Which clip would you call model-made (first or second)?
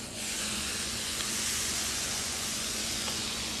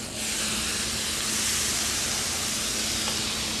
first